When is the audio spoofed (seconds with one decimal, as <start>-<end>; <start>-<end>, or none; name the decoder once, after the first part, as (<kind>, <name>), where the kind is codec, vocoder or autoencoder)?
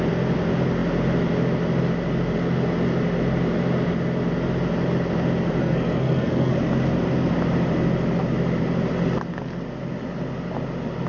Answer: 5.6-6.5 (codec, SNAC)